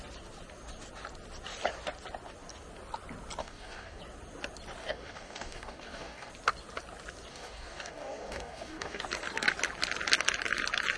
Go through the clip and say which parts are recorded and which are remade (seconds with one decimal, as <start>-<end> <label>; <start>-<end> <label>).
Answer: 0.0-3.4 recorded; 3.4-4.0 remade; 4.0-4.8 recorded; 4.8-6.3 remade; 6.3-7.3 recorded; 7.3-9.0 remade; 9.0-11.0 recorded